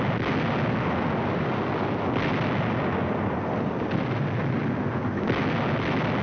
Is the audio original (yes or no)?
yes